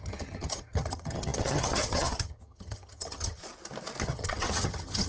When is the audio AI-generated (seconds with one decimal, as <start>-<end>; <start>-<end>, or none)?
0.0-3.4; 4.0-5.1